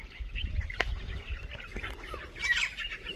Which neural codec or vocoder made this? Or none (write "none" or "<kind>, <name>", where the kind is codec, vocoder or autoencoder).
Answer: vocoder, BigVGAN v2